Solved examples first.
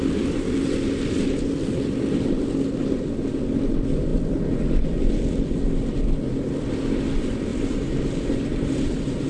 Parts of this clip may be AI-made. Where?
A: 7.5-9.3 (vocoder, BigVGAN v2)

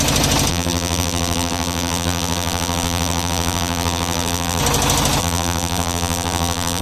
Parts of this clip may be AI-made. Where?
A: 0.5-4.6 (vocoder, BigVGAN v2); 5.2-6.8